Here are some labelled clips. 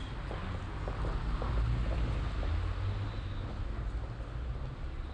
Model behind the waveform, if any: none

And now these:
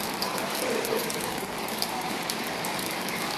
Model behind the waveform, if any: codec, DAC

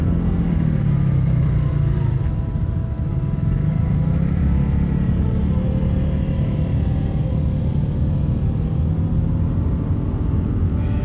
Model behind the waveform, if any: none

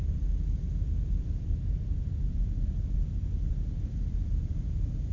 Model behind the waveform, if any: none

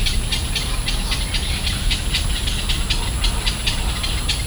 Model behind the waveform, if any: none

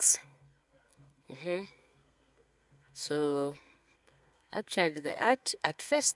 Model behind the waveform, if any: codec, SNAC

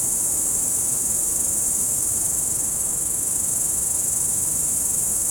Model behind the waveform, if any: autoencoder, DAC-VAE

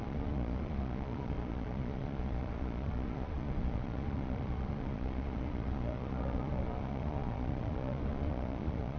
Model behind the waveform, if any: vocoder, Vocos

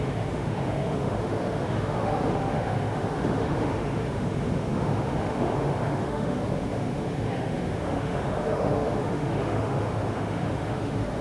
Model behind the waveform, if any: autoencoder, DAC-VAE